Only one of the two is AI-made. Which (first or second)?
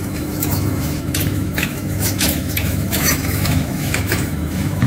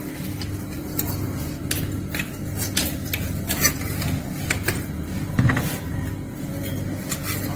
first